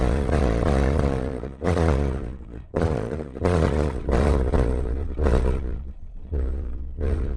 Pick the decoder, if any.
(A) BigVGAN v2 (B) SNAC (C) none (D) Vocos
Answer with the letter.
D